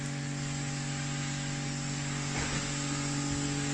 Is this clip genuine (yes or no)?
yes